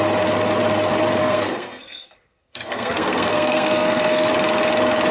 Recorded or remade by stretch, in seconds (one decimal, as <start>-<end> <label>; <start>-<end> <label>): 0.0-1.2 recorded; 1.2-4.3 remade; 4.3-5.1 recorded